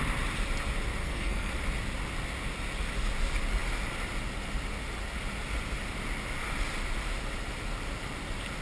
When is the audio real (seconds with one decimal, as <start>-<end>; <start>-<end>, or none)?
0.0-1.0; 1.5-8.6